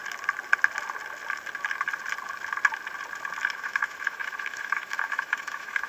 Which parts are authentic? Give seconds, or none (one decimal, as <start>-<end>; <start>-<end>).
0.0-3.5